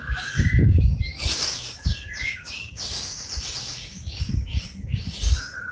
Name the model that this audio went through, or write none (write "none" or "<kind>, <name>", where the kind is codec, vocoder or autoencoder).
codec, DAC